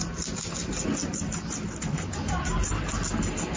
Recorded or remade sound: recorded